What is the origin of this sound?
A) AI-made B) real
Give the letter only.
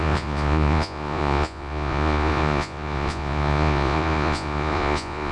A